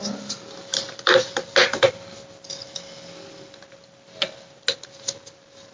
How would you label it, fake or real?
real